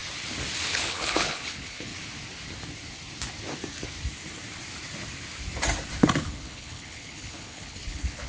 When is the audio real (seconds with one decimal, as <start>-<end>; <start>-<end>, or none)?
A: 0.0-0.7; 1.9-6.2